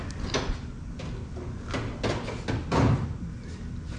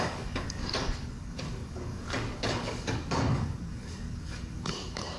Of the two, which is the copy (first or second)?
second